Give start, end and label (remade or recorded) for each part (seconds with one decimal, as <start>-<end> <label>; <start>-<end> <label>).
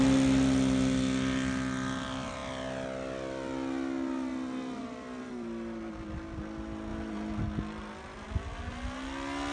0.0-9.5 recorded